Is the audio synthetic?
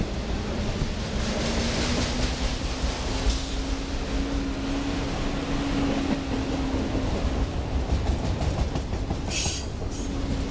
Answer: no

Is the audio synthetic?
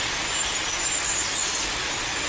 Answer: no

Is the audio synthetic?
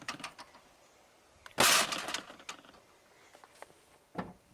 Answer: no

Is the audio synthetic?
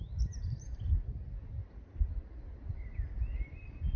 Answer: no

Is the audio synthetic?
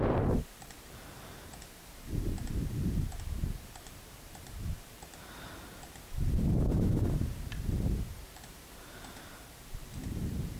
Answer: yes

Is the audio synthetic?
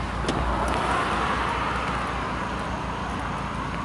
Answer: no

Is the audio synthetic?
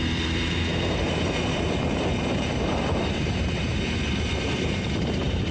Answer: yes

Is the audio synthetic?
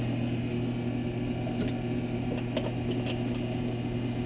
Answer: no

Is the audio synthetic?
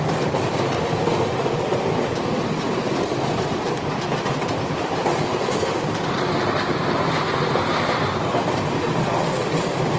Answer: no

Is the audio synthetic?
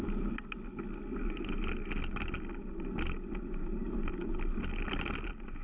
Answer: no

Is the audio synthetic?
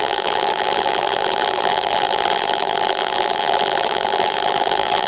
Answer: yes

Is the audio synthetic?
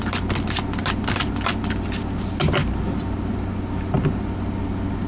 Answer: no